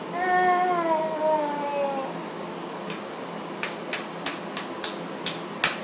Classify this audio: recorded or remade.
recorded